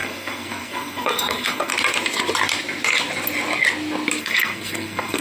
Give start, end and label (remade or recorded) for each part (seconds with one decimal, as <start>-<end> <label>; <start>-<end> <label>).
0.0-1.7 remade; 1.7-4.2 recorded; 4.2-5.2 remade